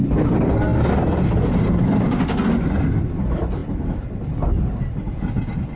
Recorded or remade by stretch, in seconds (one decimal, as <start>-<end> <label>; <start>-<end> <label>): 0.0-5.8 recorded